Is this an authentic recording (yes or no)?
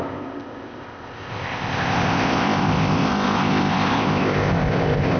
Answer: no